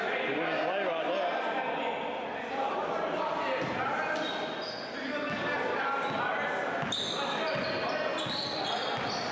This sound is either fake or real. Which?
real